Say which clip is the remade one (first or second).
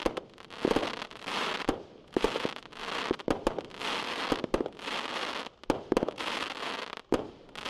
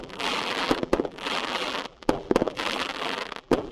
second